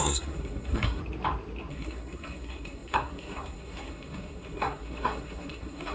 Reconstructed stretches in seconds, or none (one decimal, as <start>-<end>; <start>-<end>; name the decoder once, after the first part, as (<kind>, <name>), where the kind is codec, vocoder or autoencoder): 0.0-1.0 (codec, SNAC); 1.7-5.9